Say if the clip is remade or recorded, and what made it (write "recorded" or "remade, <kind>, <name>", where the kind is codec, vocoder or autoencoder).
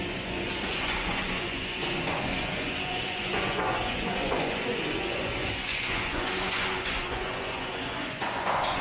remade, vocoder, Vocos